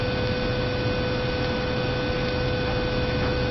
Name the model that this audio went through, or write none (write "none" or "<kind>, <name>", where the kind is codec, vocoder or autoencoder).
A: none